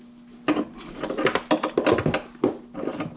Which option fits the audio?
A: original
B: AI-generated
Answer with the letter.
A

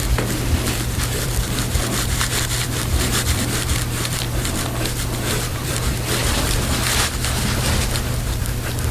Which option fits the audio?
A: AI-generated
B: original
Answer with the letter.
A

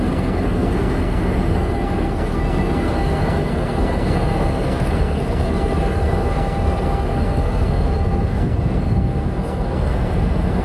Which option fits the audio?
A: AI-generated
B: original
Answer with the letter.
A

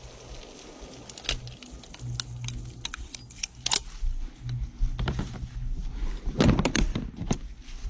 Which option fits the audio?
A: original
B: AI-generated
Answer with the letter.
A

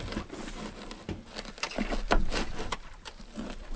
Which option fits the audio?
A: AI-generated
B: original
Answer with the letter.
B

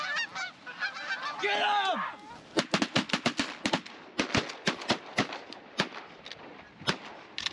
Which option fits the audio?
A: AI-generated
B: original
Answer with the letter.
B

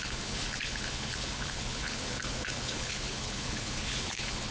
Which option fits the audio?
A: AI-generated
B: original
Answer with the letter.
A